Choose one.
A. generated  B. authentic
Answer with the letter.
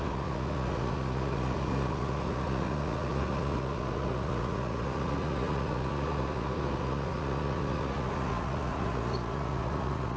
A